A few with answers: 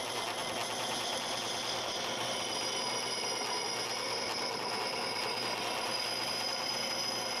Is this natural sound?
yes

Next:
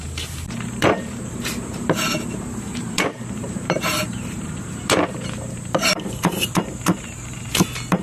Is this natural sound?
no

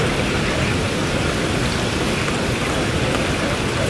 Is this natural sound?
yes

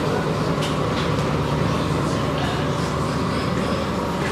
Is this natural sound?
yes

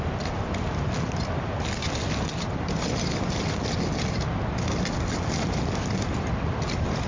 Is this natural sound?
yes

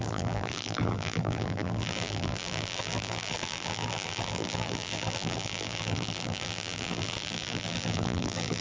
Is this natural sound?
no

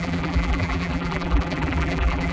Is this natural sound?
no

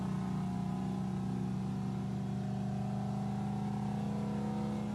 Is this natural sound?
yes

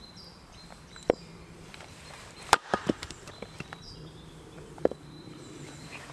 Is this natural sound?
no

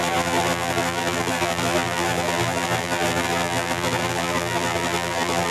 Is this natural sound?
no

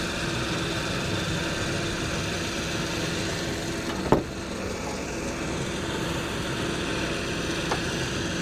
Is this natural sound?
yes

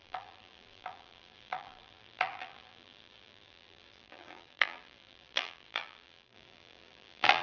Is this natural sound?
no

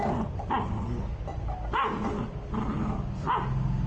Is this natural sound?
yes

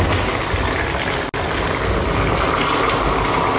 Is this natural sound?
yes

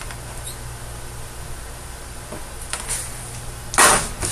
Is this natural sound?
yes